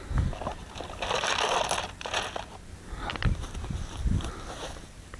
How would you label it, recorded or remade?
recorded